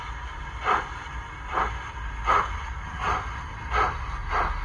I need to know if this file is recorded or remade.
recorded